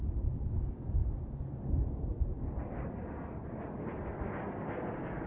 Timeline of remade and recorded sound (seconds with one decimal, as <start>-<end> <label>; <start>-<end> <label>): 0.0-5.3 recorded